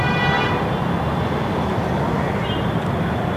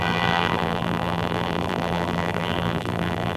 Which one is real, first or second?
first